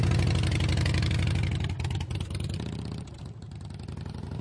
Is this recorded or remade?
recorded